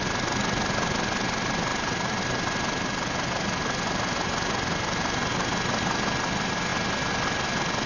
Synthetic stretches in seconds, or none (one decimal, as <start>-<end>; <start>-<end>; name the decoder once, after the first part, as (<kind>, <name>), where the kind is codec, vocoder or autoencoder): 1.7-2.2 (vocoder, BigVGAN v2)

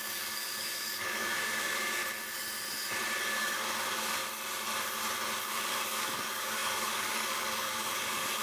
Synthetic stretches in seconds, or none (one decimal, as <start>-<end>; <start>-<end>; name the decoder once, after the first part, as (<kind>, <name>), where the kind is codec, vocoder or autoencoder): 0.0-2.0 (codec, DAC); 3.3-4.2; 5.4-8.4

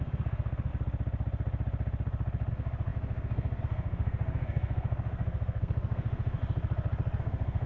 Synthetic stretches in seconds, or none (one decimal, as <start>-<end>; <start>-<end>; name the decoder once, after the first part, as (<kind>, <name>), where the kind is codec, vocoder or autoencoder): 0.0-0.7 (codec, SNAC); 2.5-6.4; 7.2-7.7

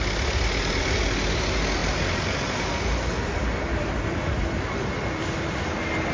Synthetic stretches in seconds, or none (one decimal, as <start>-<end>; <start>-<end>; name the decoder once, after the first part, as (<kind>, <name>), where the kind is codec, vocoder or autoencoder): none